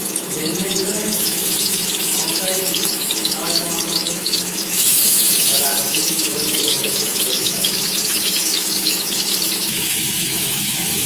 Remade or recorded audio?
remade